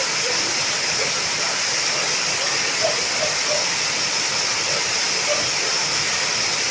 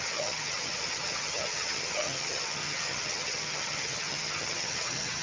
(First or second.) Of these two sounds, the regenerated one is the second